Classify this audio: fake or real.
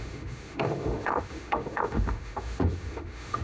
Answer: fake